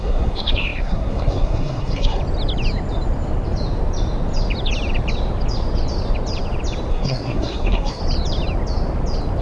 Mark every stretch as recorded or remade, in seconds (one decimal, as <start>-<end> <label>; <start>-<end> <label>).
0.0-2.2 remade; 2.2-6.9 recorded; 6.9-8.0 remade; 8.0-9.4 recorded